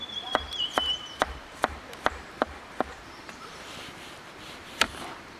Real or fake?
fake